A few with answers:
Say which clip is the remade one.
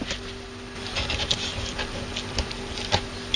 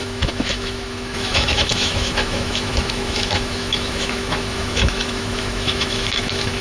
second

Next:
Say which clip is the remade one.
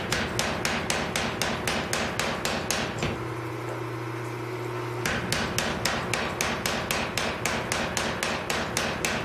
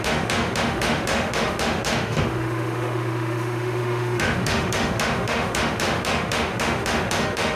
second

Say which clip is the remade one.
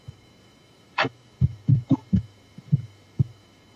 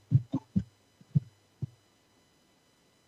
first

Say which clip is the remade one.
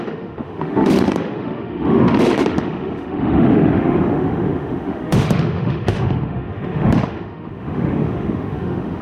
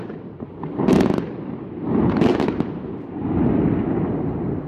first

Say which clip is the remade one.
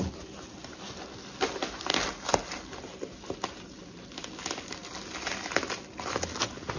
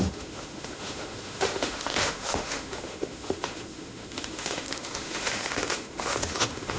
second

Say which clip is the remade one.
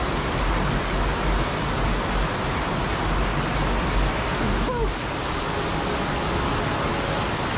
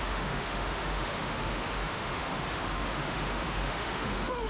second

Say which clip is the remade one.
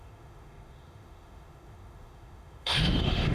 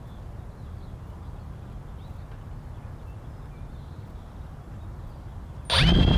first